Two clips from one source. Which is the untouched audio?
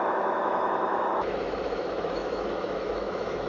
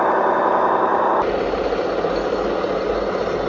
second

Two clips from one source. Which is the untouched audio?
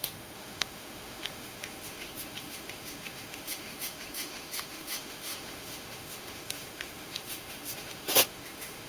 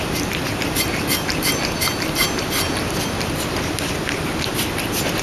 second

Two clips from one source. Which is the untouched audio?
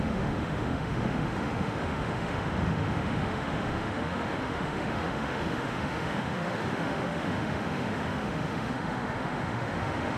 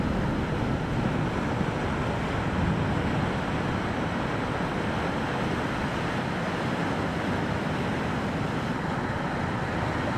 second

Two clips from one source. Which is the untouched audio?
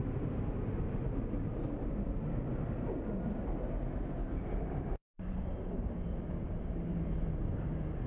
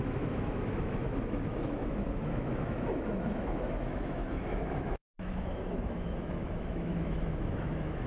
first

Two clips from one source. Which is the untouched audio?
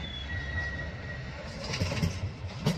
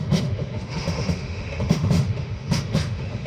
first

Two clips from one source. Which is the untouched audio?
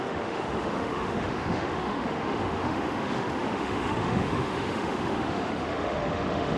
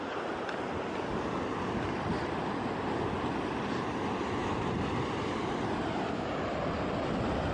second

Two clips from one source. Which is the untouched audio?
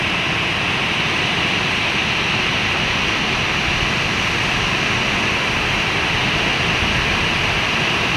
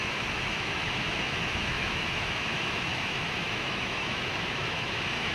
first